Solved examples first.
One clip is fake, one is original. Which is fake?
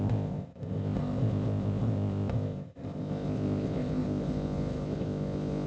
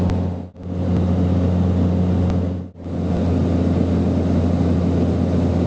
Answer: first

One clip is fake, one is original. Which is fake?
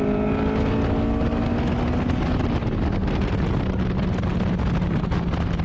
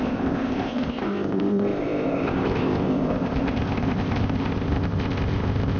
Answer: second